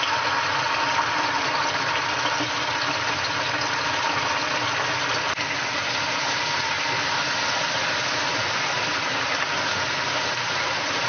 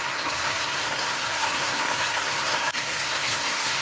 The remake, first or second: second